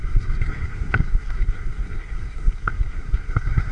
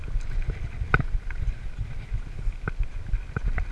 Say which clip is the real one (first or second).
second